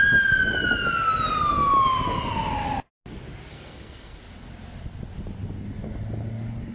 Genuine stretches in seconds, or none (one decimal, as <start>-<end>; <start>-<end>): 0.0-3.5; 4.2-6.7